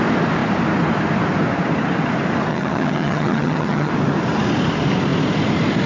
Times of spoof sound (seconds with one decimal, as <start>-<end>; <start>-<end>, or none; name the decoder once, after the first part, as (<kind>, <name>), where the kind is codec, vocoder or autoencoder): 2.5-3.9 (vocoder, HiFi-GAN)